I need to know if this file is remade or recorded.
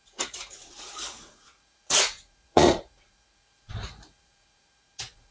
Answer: remade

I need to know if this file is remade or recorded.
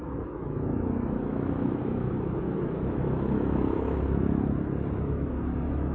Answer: remade